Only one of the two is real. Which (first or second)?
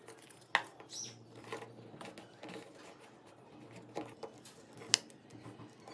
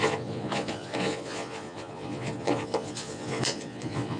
first